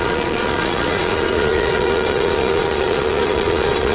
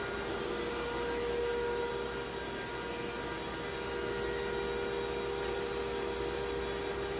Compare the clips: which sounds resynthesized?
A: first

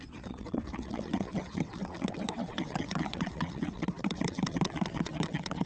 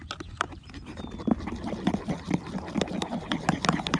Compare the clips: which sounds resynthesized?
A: first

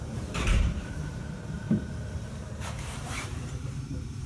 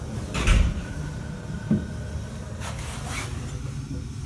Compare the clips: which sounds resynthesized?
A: first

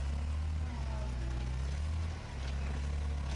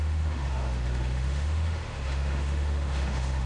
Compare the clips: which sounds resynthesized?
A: second